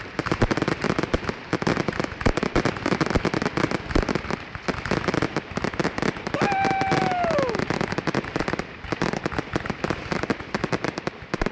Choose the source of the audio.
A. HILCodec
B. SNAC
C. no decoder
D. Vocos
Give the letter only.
C